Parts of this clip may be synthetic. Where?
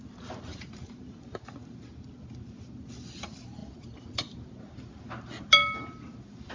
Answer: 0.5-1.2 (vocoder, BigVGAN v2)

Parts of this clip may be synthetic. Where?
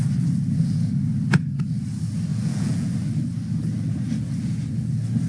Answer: 2.3-2.9 (vocoder, Vocos)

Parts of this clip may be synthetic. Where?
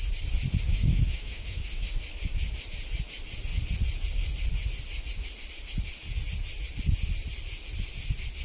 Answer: 0.7-1.9 (autoencoder, DAC-VAE)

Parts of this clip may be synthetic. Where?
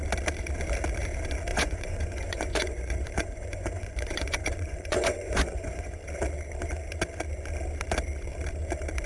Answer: 1.5-6.0 (vocoder, Vocos)